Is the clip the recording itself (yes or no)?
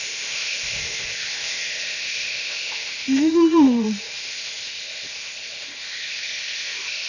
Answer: no